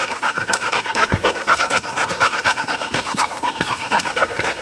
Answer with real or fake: fake